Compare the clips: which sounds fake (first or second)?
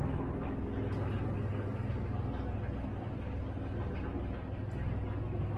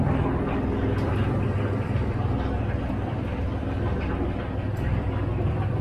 second